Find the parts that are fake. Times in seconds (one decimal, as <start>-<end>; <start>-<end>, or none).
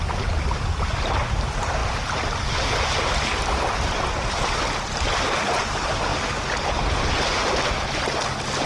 none